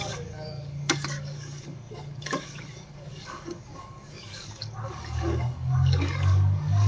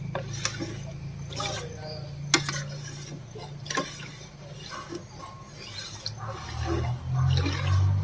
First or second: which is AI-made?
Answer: first